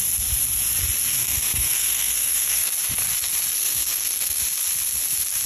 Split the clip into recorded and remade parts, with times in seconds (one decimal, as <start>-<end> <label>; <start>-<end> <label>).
0.0-1.2 recorded; 1.2-2.7 remade; 2.7-3.6 recorded; 3.6-4.4 remade; 4.4-5.5 recorded